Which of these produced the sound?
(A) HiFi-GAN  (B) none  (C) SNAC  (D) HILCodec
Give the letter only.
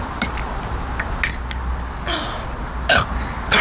B